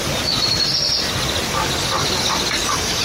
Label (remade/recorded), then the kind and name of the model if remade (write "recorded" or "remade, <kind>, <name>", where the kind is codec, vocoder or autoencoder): recorded